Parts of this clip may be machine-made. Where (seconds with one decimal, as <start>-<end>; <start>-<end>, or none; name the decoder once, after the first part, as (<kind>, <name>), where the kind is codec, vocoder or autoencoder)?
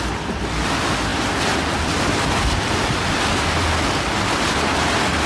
0.0-5.3 (vocoder, BigVGAN v2)